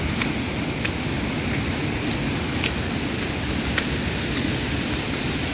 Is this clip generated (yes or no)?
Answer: no